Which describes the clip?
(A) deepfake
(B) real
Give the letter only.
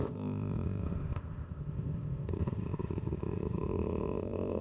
A